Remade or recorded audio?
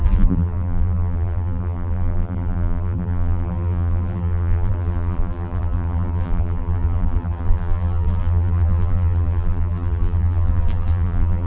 remade